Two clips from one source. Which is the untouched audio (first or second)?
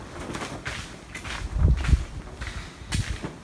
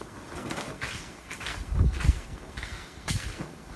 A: first